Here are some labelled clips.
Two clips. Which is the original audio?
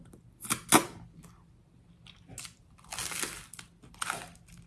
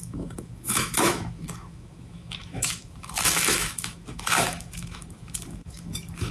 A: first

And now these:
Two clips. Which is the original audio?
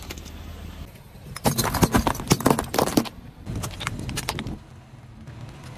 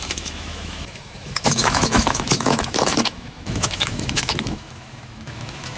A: first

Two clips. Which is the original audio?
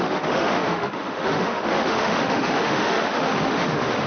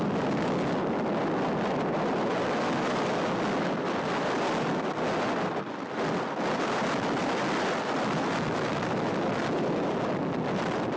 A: second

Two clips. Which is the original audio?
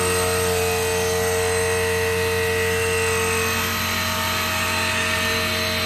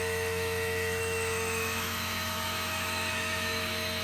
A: first